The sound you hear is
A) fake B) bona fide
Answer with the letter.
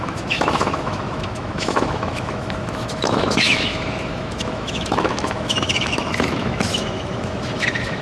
A